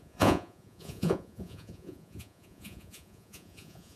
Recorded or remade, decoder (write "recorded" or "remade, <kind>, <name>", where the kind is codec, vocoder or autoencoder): remade, vocoder, Vocos